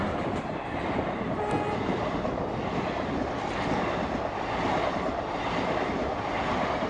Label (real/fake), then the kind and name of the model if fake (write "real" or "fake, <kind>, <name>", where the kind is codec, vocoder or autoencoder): real